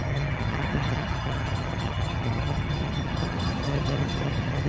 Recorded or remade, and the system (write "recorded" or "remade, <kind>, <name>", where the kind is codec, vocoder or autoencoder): remade, vocoder, HiFi-GAN